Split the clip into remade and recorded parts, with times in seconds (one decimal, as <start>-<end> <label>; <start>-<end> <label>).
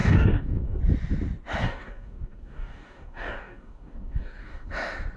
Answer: 0.0-0.8 remade; 0.8-1.6 recorded; 1.6-4.7 remade; 4.7-5.2 recorded